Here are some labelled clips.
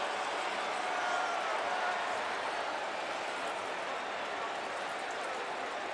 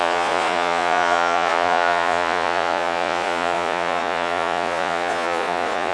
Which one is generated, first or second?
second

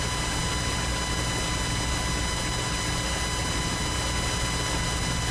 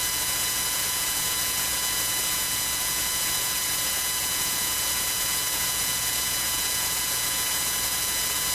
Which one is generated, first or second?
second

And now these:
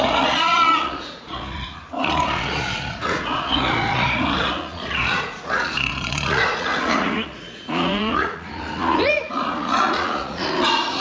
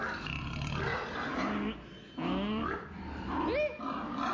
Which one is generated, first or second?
first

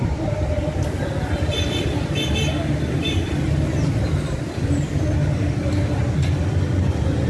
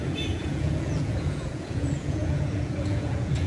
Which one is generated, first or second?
second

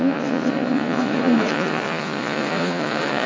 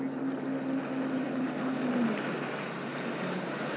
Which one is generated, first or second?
first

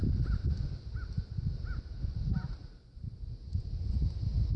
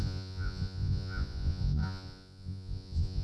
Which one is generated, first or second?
second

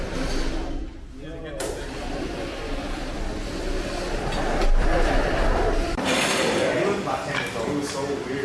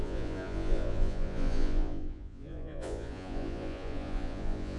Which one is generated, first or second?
second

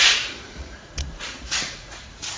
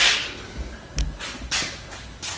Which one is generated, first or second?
first